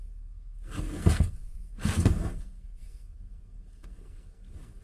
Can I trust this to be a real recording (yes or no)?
no